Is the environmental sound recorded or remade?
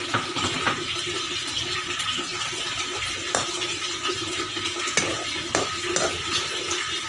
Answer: recorded